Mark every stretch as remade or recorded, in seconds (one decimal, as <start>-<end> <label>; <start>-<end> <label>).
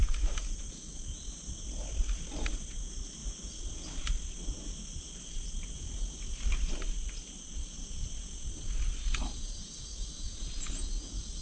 0.0-0.9 remade; 0.9-11.4 recorded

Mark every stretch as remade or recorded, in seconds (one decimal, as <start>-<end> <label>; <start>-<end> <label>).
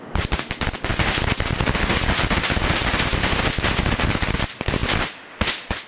0.0-5.9 recorded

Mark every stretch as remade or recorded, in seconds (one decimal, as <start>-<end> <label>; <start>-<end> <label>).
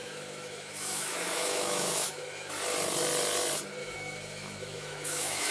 0.0-2.5 remade; 2.5-3.8 recorded; 3.8-5.5 remade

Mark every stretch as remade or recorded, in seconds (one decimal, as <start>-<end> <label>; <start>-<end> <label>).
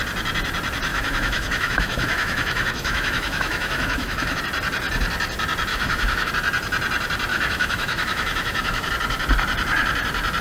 0.0-0.9 recorded; 0.9-4.4 remade; 4.4-5.7 recorded; 5.7-6.3 remade; 6.3-7.3 recorded; 7.3-8.9 remade; 8.9-10.4 recorded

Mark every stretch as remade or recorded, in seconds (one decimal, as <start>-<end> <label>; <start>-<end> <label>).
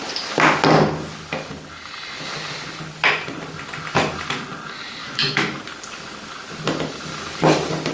0.0-5.0 recorded; 5.0-5.6 remade; 5.6-7.9 recorded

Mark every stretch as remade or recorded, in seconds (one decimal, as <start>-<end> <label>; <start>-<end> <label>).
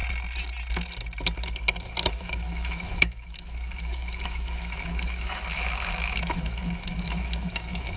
0.0-2.1 recorded; 2.1-8.0 remade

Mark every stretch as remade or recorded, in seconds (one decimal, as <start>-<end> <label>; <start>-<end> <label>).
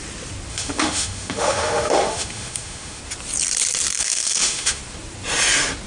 0.0-0.5 recorded; 0.5-3.0 remade; 3.0-4.0 recorded; 4.0-4.8 remade; 4.8-5.9 recorded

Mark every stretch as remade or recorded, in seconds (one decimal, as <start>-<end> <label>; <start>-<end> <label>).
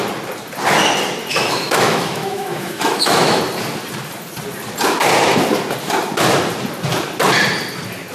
0.0-1.3 recorded; 1.3-3.4 remade; 3.4-8.1 recorded